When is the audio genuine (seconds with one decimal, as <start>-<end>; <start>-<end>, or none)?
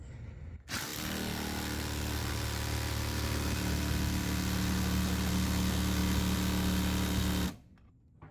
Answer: 0.0-8.3